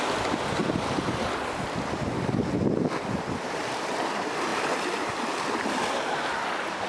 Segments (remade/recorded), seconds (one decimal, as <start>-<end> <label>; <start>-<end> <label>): 0.0-6.9 recorded